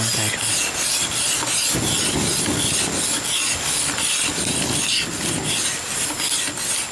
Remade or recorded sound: recorded